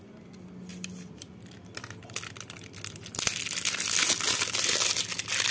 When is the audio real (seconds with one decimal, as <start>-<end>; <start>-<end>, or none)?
0.0-5.5